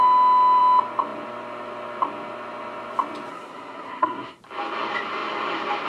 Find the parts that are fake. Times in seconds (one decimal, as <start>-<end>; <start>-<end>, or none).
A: 3.3-4.4

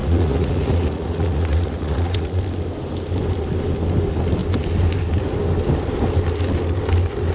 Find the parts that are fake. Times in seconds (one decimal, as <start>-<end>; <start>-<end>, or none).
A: 0.0-2.4

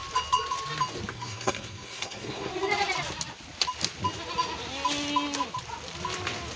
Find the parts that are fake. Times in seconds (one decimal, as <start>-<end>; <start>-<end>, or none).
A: 1.1-2.5

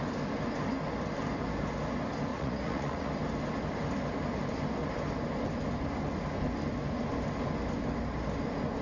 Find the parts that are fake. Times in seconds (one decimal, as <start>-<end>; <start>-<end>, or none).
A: 2.3-3.1